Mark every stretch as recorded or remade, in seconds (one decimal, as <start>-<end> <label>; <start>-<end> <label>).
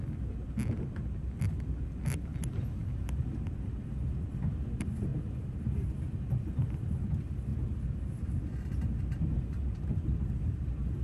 0.0-5.1 remade; 5.1-6.1 recorded; 6.1-11.0 remade